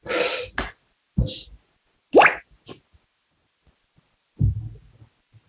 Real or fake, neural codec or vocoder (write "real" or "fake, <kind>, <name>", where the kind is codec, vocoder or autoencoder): real